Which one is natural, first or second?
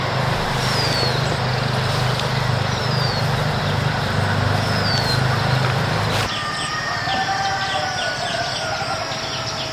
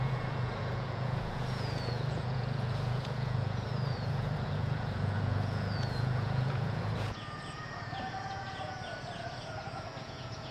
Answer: first